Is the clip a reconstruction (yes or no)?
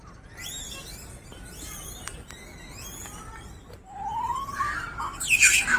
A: no